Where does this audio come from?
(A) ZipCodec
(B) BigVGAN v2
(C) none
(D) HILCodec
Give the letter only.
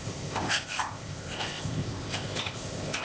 A